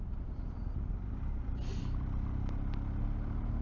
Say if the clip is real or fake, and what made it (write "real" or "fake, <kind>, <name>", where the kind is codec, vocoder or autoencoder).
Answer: real